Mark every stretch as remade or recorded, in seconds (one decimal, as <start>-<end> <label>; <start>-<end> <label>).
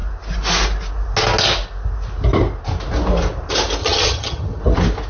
0.0-3.8 recorded; 3.8-4.6 remade; 4.6-5.1 recorded